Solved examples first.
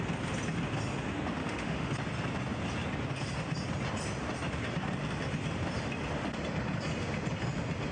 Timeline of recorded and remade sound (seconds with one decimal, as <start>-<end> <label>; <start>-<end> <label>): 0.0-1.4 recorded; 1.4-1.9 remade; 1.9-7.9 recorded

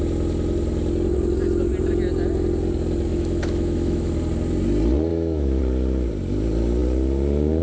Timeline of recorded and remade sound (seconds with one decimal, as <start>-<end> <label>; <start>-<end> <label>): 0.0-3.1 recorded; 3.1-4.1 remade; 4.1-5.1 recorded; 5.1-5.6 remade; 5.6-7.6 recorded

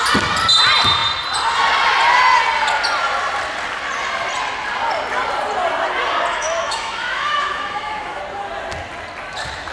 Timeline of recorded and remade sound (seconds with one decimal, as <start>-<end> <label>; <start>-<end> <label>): 0.0-6.3 recorded; 6.3-8.2 remade; 8.2-9.7 recorded

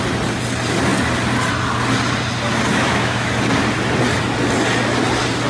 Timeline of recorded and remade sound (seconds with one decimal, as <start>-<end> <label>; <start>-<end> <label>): 0.0-2.7 recorded; 2.7-3.3 remade; 3.3-5.5 recorded